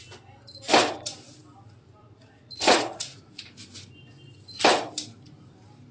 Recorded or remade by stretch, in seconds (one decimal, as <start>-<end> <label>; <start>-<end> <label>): 0.0-2.0 recorded; 2.0-3.4 remade; 3.4-5.9 recorded